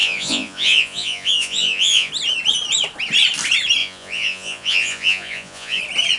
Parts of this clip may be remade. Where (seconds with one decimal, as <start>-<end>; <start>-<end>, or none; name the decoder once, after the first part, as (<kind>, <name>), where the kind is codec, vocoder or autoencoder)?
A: 0.0-2.1 (vocoder, Vocos); 3.8-5.8